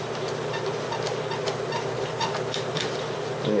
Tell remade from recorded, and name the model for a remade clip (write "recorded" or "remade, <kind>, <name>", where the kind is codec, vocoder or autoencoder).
recorded